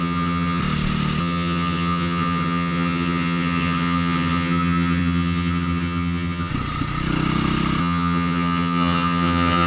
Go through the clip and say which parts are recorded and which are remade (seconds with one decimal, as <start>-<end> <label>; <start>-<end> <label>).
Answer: 0.0-0.6 remade; 0.6-1.2 recorded; 1.2-6.5 remade; 6.5-7.8 recorded; 7.8-9.7 remade